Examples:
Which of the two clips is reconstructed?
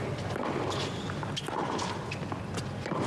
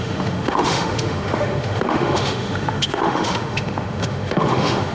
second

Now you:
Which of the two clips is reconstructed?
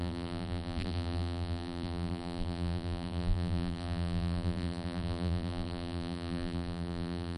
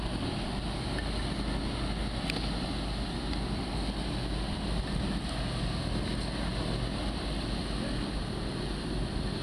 first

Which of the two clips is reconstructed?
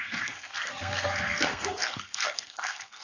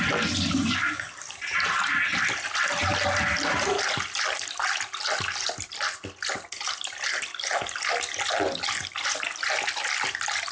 first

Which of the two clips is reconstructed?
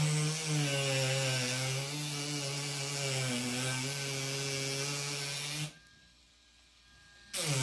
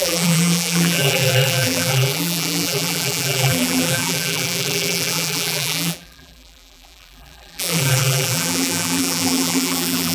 second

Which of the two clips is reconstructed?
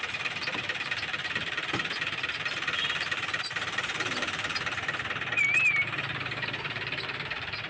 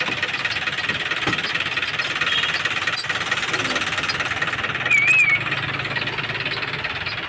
first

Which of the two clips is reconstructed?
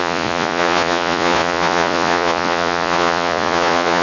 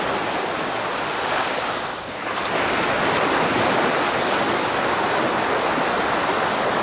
first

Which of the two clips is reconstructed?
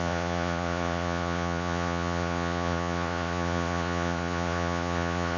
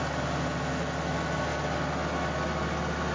first